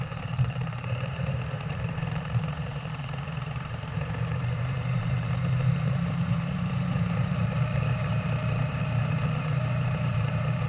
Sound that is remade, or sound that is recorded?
remade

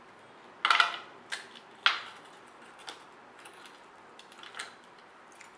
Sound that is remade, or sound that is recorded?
recorded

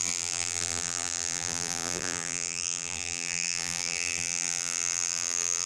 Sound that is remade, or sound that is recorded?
remade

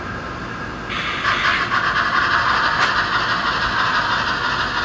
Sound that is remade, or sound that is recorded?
recorded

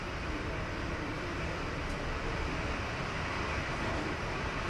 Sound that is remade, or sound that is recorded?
remade